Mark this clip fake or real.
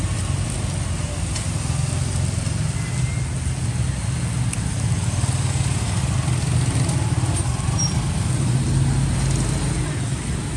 real